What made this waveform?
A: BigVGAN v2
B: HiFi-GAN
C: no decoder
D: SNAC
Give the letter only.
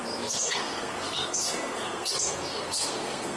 D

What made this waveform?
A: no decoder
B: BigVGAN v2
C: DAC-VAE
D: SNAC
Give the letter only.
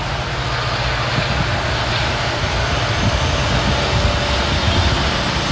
A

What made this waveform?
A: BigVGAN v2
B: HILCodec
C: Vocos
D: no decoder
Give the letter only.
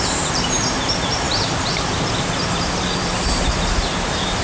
A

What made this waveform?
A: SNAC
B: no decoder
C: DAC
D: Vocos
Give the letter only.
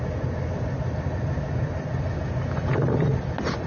B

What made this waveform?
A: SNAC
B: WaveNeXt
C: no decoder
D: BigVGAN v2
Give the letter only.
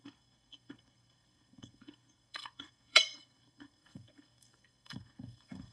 A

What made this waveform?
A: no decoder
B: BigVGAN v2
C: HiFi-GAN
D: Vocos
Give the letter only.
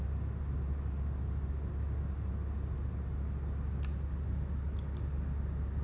A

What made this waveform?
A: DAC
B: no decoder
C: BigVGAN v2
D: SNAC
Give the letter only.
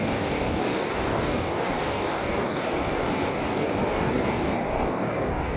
A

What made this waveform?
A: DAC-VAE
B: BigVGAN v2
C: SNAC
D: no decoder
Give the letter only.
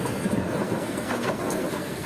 C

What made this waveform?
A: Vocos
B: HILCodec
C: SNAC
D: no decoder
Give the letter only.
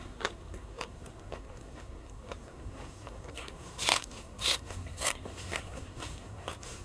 C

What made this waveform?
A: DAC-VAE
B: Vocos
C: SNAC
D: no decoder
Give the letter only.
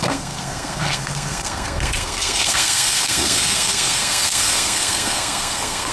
C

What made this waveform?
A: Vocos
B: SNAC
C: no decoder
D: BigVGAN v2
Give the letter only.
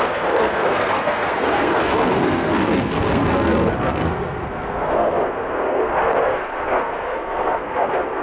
B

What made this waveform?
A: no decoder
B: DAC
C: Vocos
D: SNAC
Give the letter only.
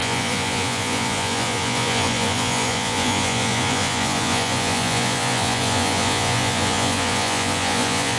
C